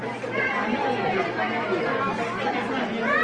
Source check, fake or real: real